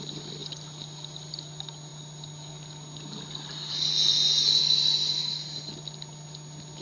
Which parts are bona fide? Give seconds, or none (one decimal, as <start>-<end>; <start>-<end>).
0.0-6.8